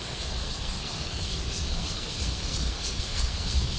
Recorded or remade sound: remade